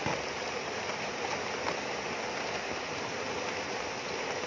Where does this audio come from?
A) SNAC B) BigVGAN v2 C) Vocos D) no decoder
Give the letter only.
D